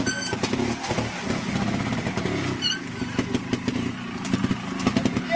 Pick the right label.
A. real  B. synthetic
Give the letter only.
A